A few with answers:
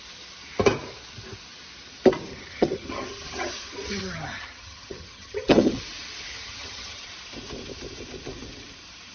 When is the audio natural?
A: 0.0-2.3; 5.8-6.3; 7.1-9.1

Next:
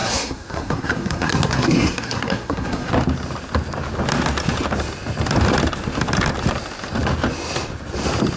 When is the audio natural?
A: 2.9-8.4

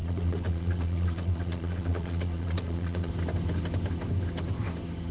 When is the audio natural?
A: 3.1-5.1

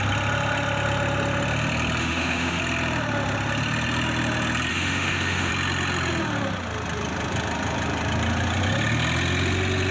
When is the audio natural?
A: 0.0-2.0; 2.6-4.7; 5.5-9.9

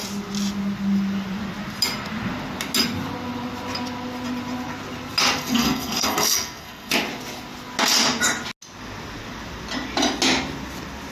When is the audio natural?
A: 0.0-5.4; 6.9-11.1